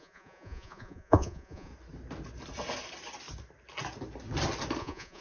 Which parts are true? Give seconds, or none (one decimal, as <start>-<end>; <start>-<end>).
1.7-4.8